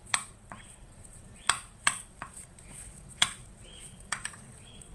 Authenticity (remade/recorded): remade